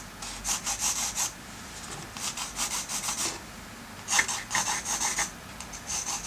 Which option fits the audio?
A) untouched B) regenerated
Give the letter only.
A